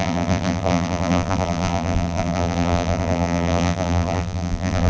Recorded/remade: remade